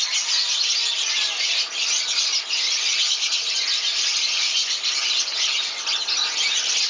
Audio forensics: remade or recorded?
recorded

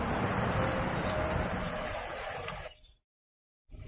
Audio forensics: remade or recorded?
remade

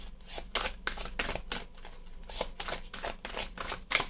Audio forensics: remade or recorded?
recorded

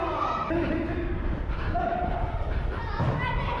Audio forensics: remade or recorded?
recorded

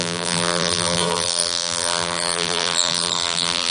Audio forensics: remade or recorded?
remade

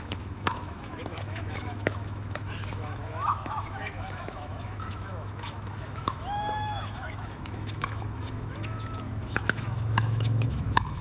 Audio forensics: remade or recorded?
remade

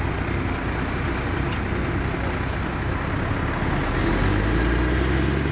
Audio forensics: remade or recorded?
recorded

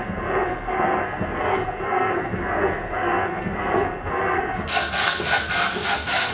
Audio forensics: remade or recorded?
remade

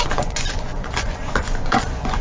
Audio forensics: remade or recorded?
remade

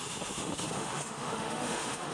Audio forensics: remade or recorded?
remade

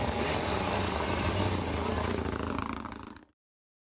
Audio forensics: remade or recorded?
recorded